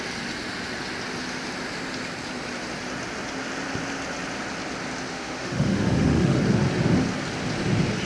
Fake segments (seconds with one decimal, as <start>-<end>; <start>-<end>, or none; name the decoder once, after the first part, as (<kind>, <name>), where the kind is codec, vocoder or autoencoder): 5.1-6.4 (autoencoder, DAC-VAE)